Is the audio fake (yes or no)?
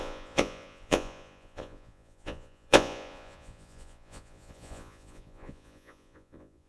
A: yes